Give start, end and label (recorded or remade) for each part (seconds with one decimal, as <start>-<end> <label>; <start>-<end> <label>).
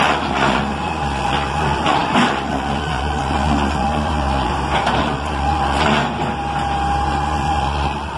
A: 0.0-4.5 remade; 4.5-5.0 recorded; 5.0-6.0 remade; 6.0-7.1 recorded; 7.1-8.2 remade